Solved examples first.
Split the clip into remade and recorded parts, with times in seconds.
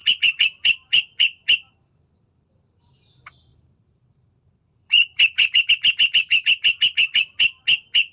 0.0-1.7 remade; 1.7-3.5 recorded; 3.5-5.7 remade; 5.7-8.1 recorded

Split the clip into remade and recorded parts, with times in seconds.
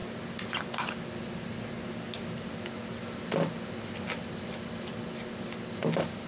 0.0-6.3 recorded